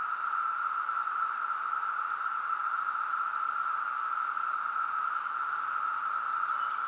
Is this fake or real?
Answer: real